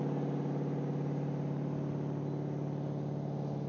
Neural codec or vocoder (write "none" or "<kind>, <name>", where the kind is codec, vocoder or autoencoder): none